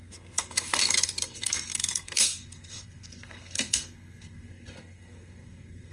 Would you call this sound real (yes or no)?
no